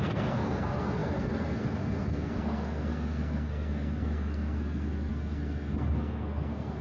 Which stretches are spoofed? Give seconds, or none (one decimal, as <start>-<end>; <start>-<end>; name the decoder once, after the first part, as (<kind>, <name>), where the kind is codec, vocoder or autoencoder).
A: 0.0-6.8 (codec, SNAC)